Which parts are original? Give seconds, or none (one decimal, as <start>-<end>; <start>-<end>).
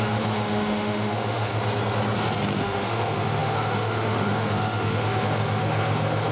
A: 1.5-2.6